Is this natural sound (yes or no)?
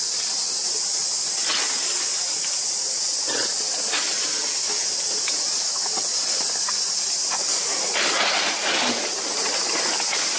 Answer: yes